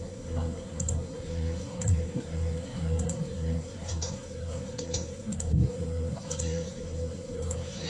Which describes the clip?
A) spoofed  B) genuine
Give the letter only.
A